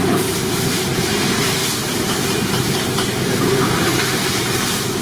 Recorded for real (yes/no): no